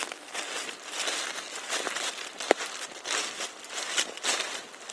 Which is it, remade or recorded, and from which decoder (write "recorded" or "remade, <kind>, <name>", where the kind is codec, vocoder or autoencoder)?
recorded